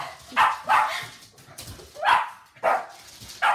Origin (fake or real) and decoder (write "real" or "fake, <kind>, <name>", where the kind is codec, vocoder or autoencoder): real